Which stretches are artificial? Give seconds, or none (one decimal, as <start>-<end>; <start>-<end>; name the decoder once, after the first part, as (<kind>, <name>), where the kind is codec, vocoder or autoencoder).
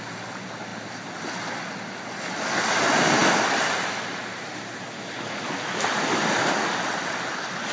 none